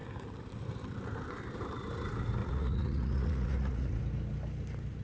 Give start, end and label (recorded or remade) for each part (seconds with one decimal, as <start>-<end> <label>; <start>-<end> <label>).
0.0-2.4 recorded; 2.4-4.0 remade; 4.0-5.0 recorded